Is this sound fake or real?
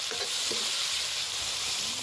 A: real